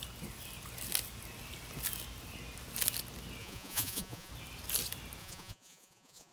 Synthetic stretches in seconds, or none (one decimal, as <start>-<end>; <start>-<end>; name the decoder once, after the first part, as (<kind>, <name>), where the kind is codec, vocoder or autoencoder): 3.4-4.3 (vocoder, Vocos); 5.2-6.3